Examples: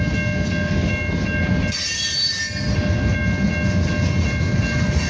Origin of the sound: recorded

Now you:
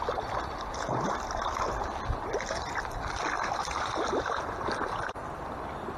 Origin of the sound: recorded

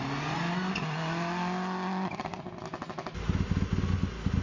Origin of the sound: recorded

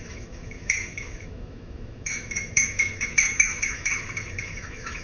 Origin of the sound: remade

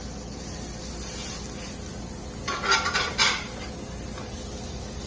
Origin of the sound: recorded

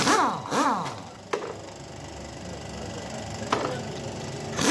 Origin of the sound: recorded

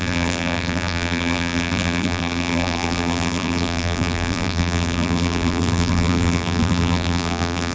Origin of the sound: remade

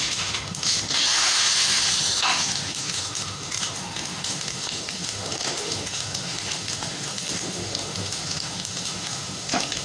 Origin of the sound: remade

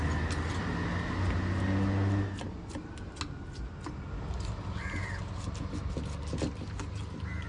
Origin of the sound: recorded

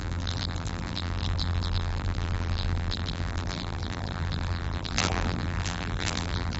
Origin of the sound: remade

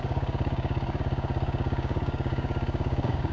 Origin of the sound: remade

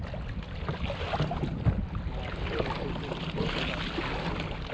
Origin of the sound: recorded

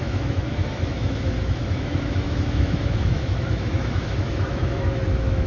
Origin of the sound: remade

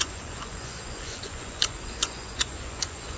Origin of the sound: remade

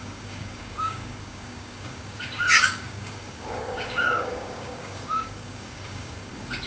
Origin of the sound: remade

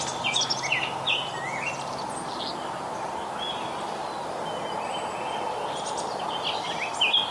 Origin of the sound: recorded